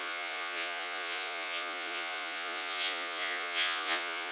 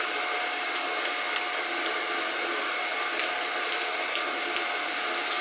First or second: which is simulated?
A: first